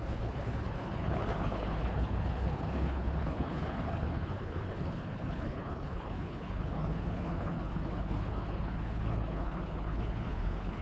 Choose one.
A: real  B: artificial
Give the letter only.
B